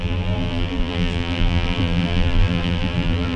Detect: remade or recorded remade